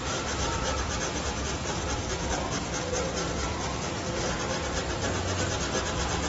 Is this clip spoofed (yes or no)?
no